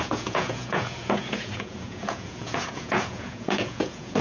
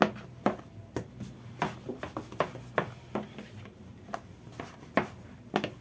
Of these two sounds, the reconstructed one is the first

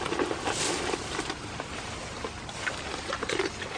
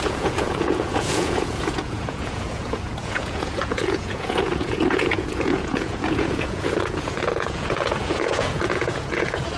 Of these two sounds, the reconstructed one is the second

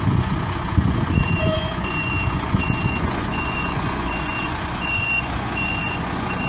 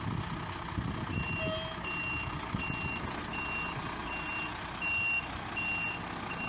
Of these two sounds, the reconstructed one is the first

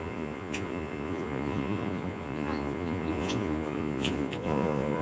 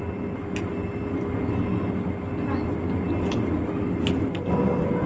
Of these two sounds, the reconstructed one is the first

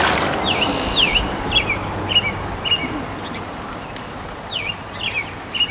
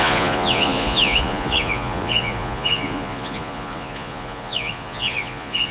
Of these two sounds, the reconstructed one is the second